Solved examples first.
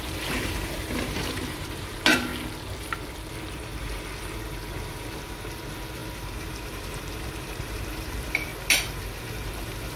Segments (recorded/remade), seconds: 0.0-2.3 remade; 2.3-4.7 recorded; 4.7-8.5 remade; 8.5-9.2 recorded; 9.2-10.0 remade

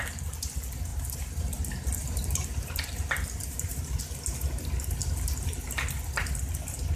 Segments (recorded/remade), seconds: 0.0-0.9 recorded; 0.9-4.0 remade; 4.0-7.0 recorded